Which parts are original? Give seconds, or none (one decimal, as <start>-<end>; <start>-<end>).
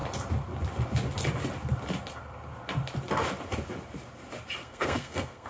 0.0-4.6